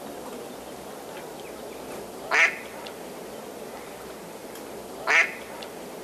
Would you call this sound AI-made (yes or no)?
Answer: no